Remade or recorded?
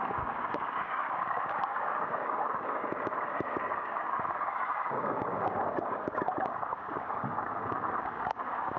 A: remade